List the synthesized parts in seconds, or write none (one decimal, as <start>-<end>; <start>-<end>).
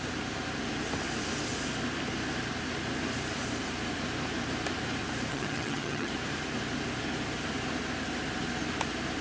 5.3-6.1